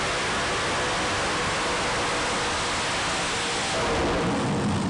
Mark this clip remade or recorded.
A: recorded